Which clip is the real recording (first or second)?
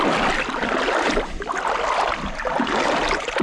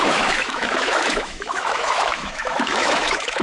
first